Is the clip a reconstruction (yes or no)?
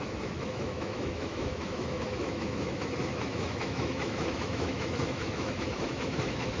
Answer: yes